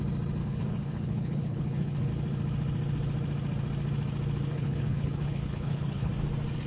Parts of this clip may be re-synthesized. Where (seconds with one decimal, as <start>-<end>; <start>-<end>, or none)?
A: 0.4-2.1; 4.5-6.1